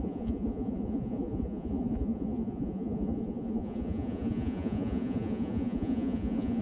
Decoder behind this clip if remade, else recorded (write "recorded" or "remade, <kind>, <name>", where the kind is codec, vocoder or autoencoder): remade, vocoder, Vocos